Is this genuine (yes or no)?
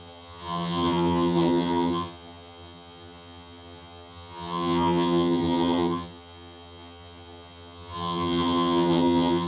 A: no